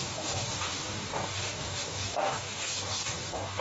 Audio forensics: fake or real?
fake